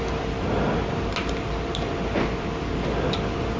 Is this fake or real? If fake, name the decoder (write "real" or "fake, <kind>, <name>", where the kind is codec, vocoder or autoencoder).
real